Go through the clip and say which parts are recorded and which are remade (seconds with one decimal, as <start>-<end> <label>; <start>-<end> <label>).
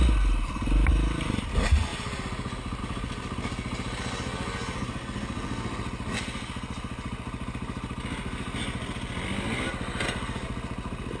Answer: 0.0-1.9 recorded; 1.9-2.8 remade; 2.8-11.2 recorded